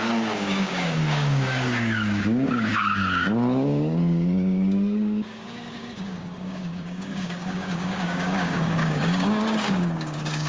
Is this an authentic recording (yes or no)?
no